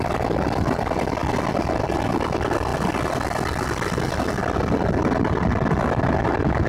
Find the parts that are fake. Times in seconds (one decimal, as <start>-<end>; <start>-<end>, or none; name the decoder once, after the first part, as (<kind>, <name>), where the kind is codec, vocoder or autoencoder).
none